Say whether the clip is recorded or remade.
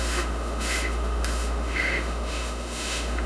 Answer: remade